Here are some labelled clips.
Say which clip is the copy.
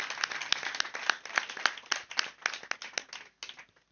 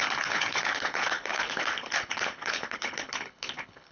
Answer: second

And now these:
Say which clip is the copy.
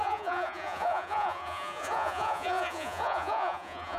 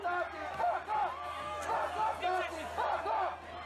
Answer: first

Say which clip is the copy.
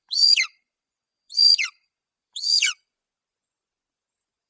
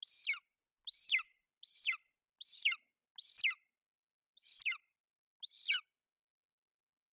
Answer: first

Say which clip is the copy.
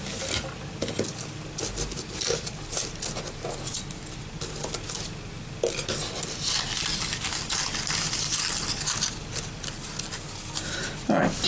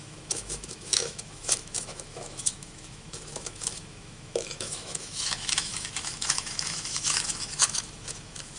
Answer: second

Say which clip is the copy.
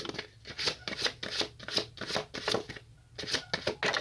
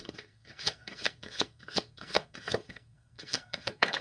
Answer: second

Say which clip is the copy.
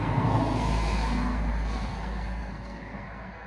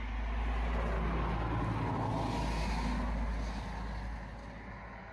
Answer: first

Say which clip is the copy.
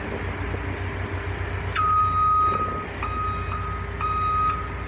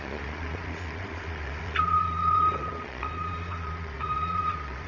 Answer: second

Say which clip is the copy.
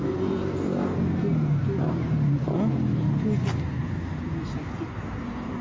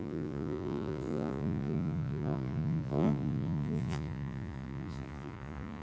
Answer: second